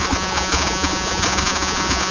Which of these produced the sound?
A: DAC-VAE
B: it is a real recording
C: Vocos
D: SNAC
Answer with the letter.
C